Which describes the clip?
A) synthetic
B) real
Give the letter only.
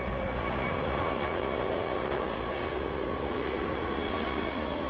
A